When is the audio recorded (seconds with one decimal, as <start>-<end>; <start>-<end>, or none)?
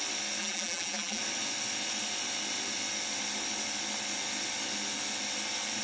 0.0-0.4; 1.2-5.8